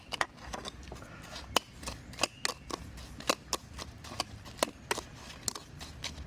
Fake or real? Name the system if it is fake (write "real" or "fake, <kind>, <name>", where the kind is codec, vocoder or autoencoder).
real